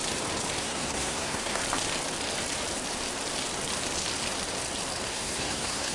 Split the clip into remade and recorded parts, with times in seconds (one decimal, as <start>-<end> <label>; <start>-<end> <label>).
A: 0.0-0.6 recorded; 0.6-1.6 remade; 1.6-5.1 recorded; 5.1-5.9 remade